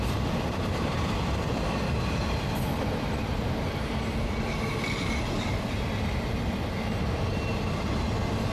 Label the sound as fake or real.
real